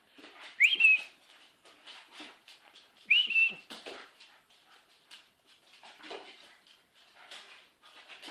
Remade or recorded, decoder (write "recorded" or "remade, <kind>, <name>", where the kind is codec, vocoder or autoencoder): remade, vocoder, BigVGAN v2